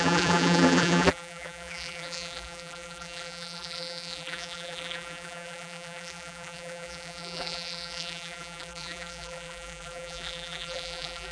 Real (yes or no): no